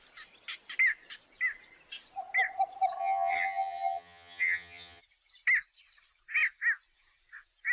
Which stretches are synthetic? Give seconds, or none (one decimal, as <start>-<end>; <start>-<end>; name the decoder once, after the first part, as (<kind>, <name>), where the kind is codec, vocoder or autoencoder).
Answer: 3.0-5.0 (vocoder, HiFi-GAN)